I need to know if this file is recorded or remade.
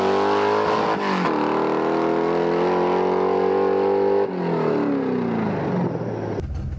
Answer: recorded